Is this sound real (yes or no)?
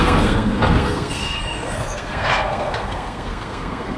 no